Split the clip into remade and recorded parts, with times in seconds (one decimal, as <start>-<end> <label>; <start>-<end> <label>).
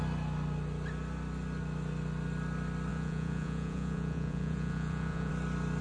0.0-2.9 recorded; 2.9-5.3 remade; 5.3-5.8 recorded